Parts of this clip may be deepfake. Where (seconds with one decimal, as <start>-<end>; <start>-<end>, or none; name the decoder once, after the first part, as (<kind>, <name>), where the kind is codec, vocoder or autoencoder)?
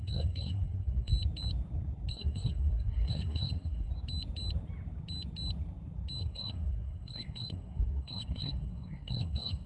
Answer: 0.0-1.1 (codec, SNAC); 2.1-3.9; 6.2-9.7